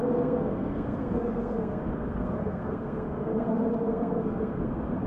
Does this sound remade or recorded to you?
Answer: remade